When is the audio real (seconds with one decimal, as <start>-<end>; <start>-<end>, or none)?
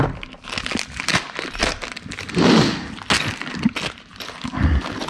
0.0-5.1